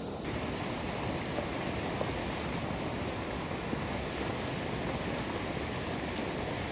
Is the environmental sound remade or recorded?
recorded